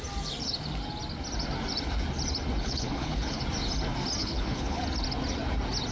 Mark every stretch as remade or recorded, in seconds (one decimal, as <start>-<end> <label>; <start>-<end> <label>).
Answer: 0.0-2.6 recorded; 2.6-3.4 remade; 3.4-4.2 recorded; 4.2-4.8 remade; 4.8-5.9 recorded